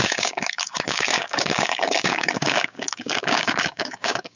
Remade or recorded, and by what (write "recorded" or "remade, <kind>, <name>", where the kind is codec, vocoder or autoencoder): remade, codec, DAC